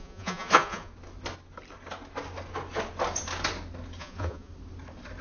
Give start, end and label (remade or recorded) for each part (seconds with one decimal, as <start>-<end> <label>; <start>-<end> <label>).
0.0-0.9 remade; 0.9-4.0 recorded; 4.0-4.5 remade; 4.5-5.2 recorded